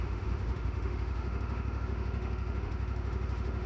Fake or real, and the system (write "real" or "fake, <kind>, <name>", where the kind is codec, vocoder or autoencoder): fake, autoencoder, DAC-VAE